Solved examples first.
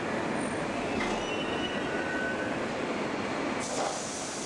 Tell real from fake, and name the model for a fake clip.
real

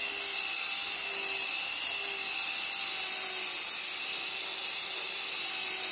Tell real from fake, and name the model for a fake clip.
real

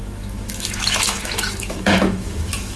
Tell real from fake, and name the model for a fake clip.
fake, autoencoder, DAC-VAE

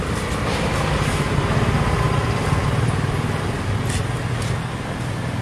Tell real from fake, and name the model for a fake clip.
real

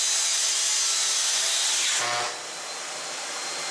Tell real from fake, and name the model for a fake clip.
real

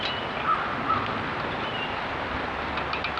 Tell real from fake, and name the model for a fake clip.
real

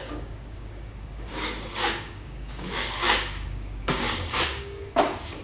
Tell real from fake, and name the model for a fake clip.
fake, codec, DAC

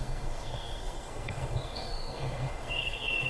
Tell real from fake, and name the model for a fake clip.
fake, codec, SNAC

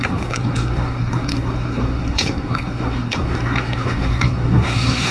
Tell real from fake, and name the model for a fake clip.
fake, codec, SNAC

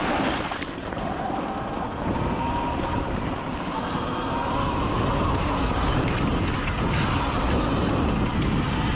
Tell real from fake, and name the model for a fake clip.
real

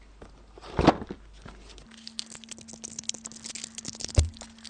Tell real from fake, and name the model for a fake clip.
real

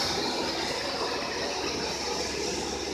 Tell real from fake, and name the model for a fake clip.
real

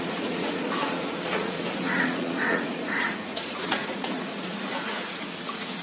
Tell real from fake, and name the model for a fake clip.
fake, vocoder, Vocos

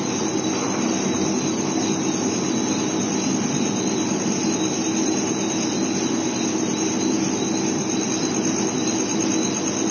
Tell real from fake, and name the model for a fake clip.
real